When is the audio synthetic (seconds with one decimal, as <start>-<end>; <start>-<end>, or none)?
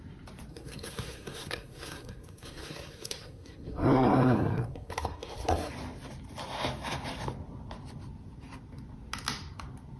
0.5-5.7